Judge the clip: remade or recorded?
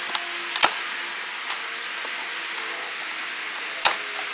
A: recorded